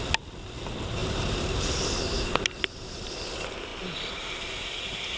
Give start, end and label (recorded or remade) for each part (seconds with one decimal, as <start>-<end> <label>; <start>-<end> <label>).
0.0-1.0 recorded; 1.0-2.3 remade; 2.3-5.2 recorded